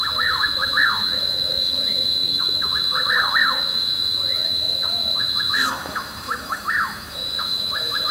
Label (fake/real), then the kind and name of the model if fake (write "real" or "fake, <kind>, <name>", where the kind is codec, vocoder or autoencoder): fake, autoencoder, DAC-VAE